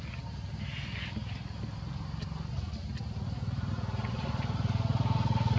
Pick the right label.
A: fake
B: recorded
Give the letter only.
B